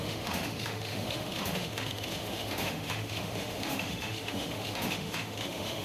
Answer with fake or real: fake